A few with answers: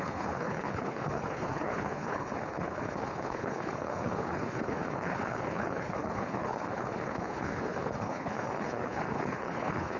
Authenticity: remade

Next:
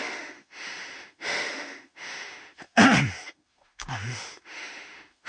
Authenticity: remade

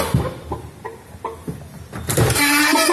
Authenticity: recorded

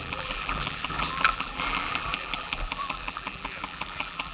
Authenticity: remade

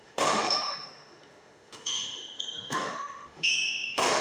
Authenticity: remade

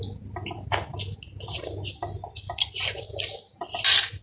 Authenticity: recorded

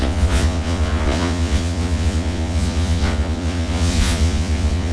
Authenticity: remade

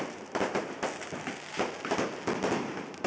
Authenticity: recorded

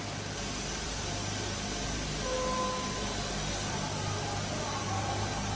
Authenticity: recorded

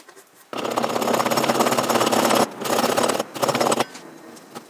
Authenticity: recorded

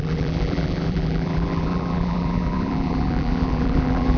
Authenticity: remade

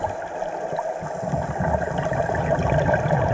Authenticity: recorded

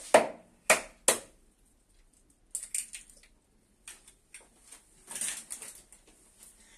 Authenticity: recorded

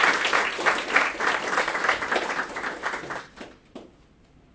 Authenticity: recorded